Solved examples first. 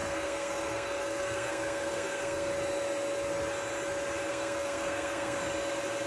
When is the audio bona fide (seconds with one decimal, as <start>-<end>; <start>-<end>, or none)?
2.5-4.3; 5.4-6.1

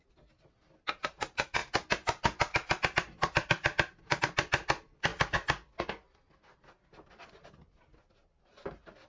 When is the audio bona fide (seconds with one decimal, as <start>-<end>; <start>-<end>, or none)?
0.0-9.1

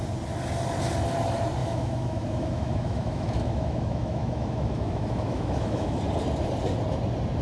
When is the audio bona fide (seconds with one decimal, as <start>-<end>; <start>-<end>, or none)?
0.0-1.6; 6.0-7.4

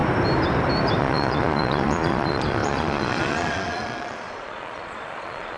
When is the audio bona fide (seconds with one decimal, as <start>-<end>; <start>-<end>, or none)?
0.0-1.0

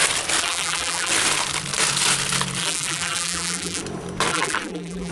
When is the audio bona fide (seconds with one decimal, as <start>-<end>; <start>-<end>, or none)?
0.0-0.4; 1.1-2.6; 3.8-4.3

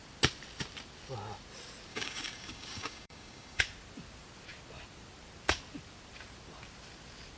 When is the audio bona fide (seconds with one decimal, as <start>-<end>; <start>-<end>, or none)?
0.0-1.9; 3.6-7.4

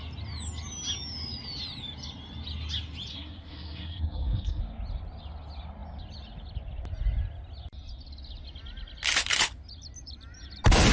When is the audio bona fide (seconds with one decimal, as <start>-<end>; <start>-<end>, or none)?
0.0-3.1; 4.6-10.9

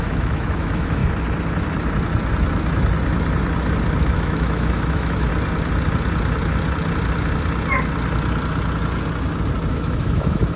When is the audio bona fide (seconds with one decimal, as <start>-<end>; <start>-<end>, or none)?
1.0-4.1; 5.3-9.7